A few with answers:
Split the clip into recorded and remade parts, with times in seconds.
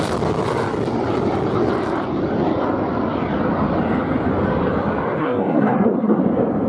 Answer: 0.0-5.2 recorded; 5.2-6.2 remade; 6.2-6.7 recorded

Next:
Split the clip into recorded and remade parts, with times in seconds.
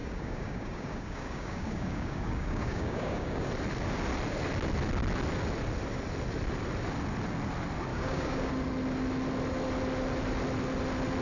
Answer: 0.0-3.5 remade; 3.5-7.9 recorded; 7.9-8.5 remade; 8.5-11.2 recorded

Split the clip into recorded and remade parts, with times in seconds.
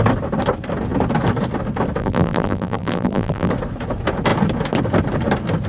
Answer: 0.0-2.0 recorded; 2.0-3.5 remade; 3.5-5.7 recorded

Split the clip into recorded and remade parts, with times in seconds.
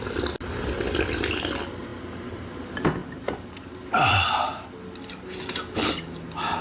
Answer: 0.0-3.0 recorded; 3.0-3.7 remade; 3.7-6.6 recorded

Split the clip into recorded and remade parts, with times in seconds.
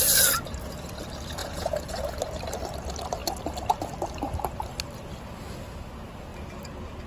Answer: 0.0-1.4 recorded; 1.4-2.1 remade; 2.1-7.1 recorded